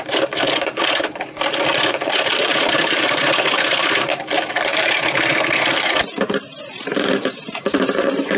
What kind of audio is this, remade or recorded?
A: remade